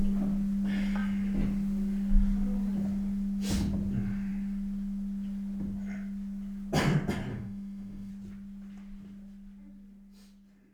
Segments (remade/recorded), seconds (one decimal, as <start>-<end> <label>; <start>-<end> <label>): 0.0-7.3 recorded; 7.3-8.1 remade; 8.1-10.7 recorded